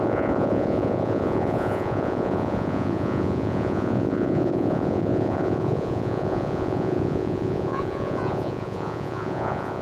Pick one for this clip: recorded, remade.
remade